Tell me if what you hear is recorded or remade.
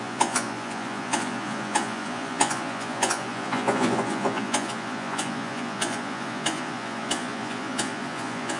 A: remade